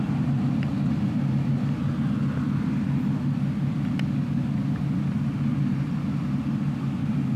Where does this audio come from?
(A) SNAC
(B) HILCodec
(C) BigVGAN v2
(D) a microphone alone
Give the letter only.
D